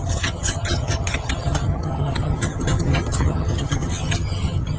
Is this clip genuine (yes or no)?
no